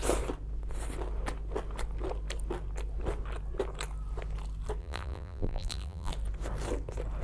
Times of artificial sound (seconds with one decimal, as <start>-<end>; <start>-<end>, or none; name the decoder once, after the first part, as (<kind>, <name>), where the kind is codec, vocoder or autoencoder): 4.8-6.1 (vocoder, BigVGAN v2)